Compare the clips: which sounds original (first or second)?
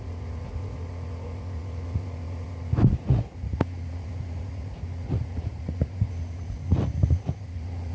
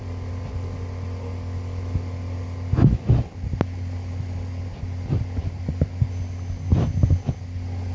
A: second